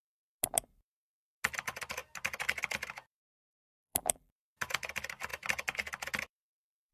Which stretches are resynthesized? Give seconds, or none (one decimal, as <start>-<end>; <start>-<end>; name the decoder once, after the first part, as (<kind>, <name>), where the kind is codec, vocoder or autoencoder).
3.2-4.3 (vocoder, BigVGAN v2)